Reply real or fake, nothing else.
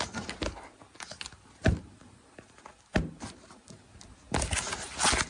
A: real